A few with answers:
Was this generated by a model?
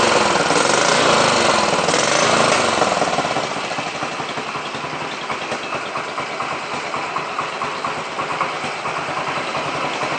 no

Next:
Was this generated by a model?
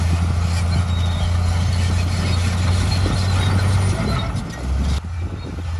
no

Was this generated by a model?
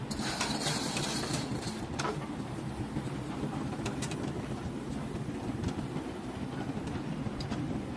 yes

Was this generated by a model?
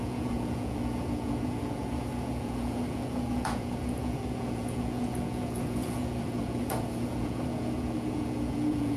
yes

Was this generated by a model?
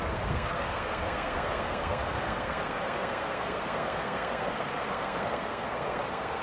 yes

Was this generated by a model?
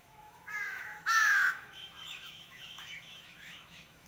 yes